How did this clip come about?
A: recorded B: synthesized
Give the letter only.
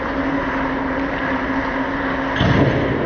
A